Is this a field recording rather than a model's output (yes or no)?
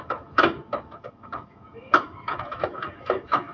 no